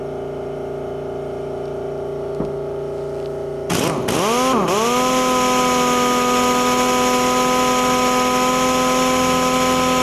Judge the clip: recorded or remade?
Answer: recorded